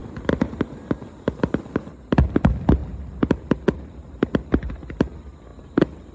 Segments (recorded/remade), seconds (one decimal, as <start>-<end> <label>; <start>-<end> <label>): 0.0-1.0 remade; 1.0-2.8 recorded; 2.8-3.5 remade; 3.5-5.5 recorded; 5.5-6.1 remade